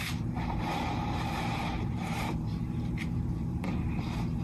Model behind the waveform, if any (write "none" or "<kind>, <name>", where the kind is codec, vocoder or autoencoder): vocoder, BigVGAN v2